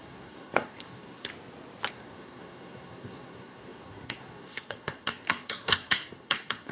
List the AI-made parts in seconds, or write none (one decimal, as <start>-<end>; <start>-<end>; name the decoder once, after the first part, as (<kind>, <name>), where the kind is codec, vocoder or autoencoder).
0.0-1.3 (codec, SNAC); 1.9-6.7